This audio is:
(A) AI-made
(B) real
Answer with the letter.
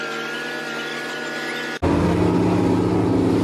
B